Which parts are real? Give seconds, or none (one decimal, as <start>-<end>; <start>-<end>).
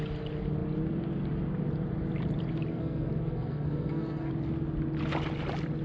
0.0-2.7; 4.3-5.8